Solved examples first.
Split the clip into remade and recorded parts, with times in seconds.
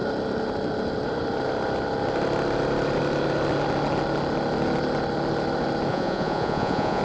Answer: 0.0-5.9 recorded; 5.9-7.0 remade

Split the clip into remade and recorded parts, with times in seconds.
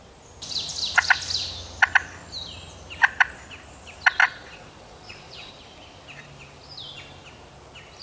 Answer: 0.0-4.2 recorded; 4.2-5.5 remade; 5.5-8.0 recorded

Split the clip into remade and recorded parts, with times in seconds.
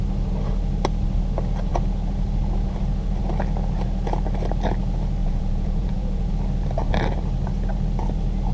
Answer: 0.0-5.2 recorded; 5.2-6.3 remade; 6.3-8.5 recorded